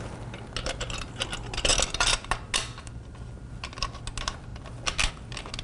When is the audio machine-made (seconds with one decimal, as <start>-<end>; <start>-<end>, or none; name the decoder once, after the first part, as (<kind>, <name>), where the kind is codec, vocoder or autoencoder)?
none